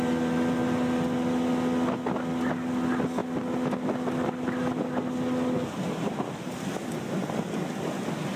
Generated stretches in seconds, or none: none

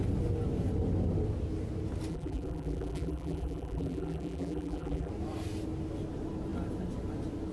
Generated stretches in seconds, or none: 2.1-5.1 (vocoder, BigVGAN v2)

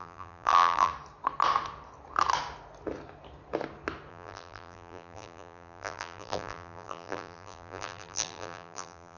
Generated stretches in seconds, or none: 0.0-0.9 (vocoder, BigVGAN v2); 4.1-9.2

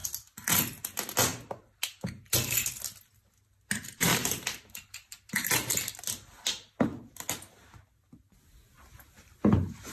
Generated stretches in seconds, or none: 0.0-0.6 (vocoder, BigVGAN v2); 4.1-5.8

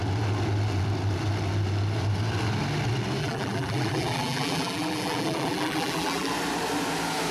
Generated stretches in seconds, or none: 3.2-6.3 (vocoder, BigVGAN v2)

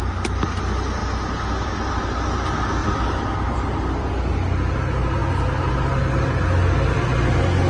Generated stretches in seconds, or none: 2.8-4.3 (vocoder, BigVGAN v2)

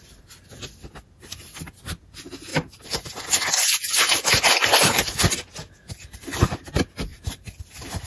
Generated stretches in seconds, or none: 2.5-3.2 (vocoder, BigVGAN v2); 3.6-6.6; 7.1-7.6